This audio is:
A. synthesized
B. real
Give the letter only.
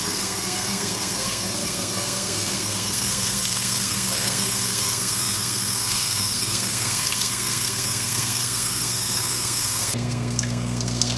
A